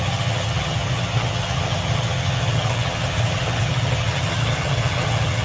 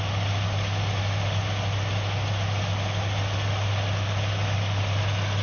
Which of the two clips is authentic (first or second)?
second